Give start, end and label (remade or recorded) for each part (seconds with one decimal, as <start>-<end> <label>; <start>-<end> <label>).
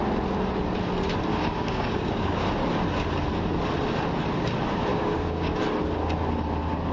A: 0.0-1.3 recorded; 1.3-2.5 remade; 2.5-4.9 recorded; 4.9-5.6 remade; 5.6-6.9 recorded